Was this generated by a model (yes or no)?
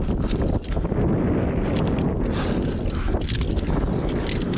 no